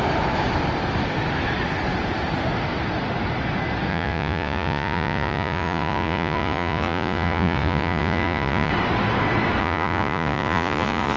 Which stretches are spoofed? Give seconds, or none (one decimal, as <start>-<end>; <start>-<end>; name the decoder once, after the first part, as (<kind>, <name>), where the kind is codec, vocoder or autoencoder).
3.9-8.7 (vocoder, Vocos); 9.6-11.2